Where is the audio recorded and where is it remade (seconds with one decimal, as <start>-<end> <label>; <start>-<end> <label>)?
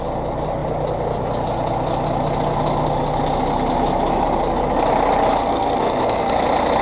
0.0-5.4 recorded; 5.4-6.3 remade; 6.3-6.8 recorded